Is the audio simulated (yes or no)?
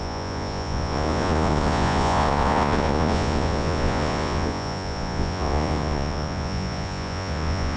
yes